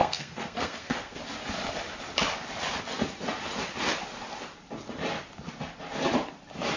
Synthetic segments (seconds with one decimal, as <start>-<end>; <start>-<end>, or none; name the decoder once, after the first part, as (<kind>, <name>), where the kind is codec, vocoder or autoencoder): 0.0-1.2 (codec, SNAC)